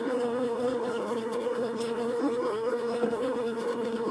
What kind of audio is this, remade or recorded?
remade